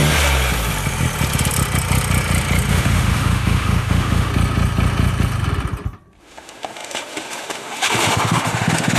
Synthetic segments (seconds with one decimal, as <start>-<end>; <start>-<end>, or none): 2.7-4.3; 6.2-9.0